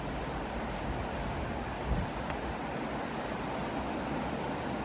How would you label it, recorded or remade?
recorded